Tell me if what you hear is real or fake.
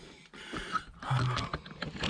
real